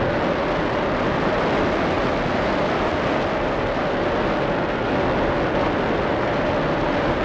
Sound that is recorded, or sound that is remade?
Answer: recorded